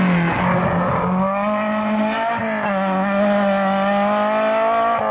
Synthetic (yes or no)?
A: no